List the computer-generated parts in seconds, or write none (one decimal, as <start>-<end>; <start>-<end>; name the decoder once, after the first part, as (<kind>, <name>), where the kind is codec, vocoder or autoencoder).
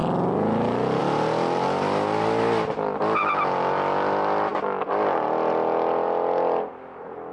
none